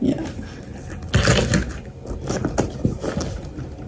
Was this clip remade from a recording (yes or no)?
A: no